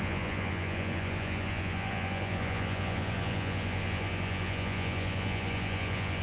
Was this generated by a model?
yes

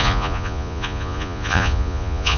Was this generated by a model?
yes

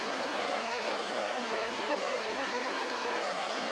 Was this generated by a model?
yes